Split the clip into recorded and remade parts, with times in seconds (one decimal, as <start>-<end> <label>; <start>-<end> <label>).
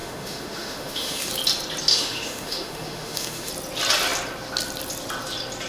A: 0.0-1.3 remade; 1.3-1.9 recorded; 1.9-3.5 remade; 3.5-5.7 recorded